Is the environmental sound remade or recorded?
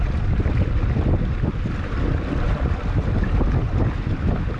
recorded